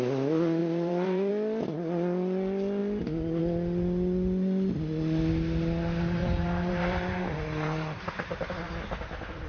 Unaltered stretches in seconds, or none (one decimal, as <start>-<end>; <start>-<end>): 0.0-0.6; 1.3-6.2; 8.7-9.5

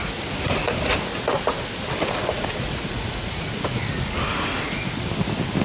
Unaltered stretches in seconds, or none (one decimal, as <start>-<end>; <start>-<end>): 0.6-2.2; 3.8-5.6